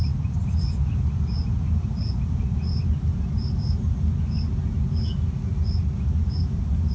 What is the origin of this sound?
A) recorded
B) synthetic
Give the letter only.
A